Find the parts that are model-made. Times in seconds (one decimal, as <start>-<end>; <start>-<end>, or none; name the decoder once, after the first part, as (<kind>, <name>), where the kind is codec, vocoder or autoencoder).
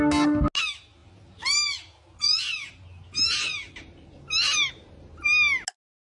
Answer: none